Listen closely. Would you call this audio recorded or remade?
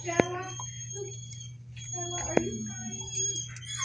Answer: recorded